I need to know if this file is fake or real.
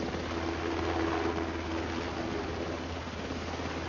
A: real